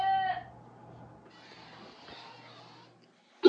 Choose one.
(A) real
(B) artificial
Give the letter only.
A